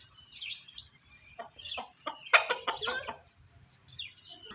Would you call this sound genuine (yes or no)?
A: yes